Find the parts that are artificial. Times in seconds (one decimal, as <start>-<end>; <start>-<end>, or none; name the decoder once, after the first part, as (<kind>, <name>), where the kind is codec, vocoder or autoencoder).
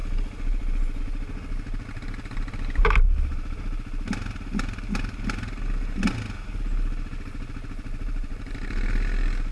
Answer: none